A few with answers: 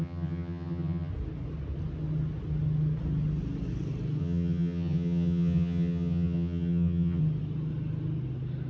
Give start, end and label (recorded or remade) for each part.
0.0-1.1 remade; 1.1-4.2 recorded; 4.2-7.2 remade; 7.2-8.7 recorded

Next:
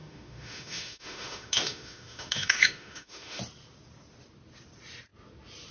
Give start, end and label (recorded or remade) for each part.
0.0-3.4 remade; 3.4-5.7 recorded

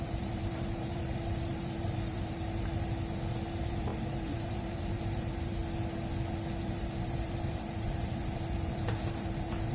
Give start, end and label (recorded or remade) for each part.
0.0-2.7 remade; 2.7-3.3 recorded; 3.3-5.6 remade; 5.6-6.6 recorded; 6.6-9.7 remade

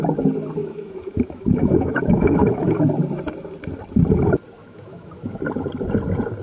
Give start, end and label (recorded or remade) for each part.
0.0-0.6 recorded; 0.6-2.8 remade; 2.8-4.6 recorded; 4.6-5.4 remade; 5.4-6.4 recorded

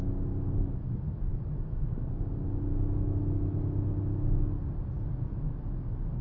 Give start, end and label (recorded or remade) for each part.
0.0-6.2 recorded

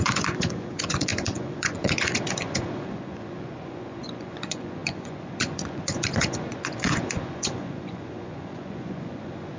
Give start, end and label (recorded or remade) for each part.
0.0-9.6 remade

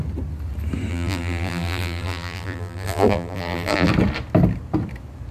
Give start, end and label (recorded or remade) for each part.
0.0-0.9 recorded; 0.9-3.9 remade; 3.9-5.3 recorded